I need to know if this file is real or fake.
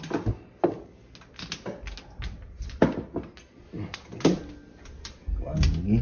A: real